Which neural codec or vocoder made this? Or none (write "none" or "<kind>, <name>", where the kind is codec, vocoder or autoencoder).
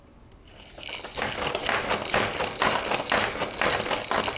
none